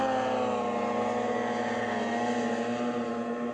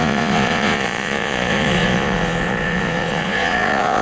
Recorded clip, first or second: first